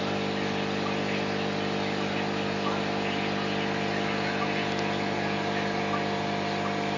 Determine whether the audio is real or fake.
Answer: real